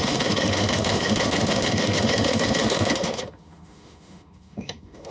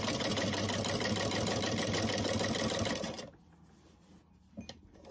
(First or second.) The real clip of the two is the second